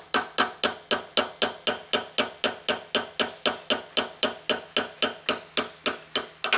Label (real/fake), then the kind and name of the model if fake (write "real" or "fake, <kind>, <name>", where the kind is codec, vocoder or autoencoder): real